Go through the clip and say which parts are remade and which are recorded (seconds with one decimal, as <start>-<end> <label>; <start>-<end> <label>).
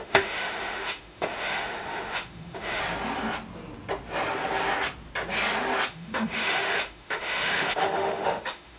0.0-2.8 remade; 2.8-5.9 recorded; 5.9-8.8 remade